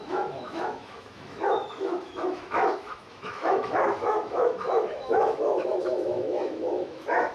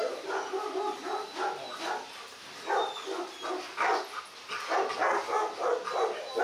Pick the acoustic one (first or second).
second